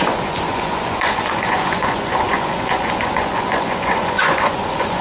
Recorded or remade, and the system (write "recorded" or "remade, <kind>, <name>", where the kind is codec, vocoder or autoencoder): remade, vocoder, Vocos